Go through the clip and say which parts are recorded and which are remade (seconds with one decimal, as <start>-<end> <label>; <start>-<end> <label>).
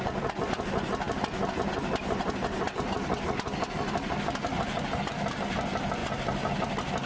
0.0-7.1 recorded